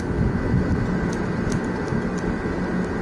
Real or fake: real